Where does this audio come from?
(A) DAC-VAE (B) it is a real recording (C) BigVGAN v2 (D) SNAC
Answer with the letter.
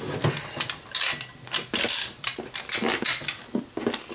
B